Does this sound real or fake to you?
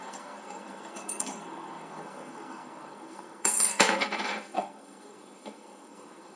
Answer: fake